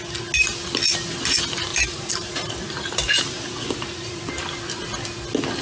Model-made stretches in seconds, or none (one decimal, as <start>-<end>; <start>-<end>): 1.7-4.2